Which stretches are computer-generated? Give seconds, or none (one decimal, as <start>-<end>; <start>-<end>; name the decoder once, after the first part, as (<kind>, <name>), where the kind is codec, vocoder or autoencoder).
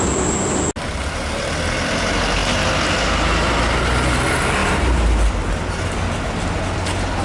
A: none